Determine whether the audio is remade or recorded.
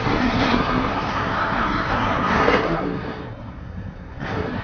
remade